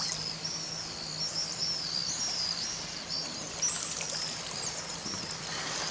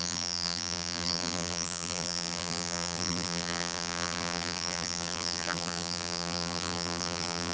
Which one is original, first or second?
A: first